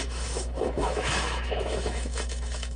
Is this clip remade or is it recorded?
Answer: remade